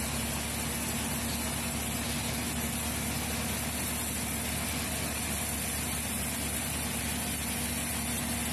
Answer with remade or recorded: recorded